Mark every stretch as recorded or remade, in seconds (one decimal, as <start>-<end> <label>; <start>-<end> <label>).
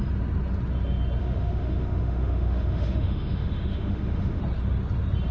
0.0-1.2 recorded; 1.2-4.4 remade; 4.4-5.3 recorded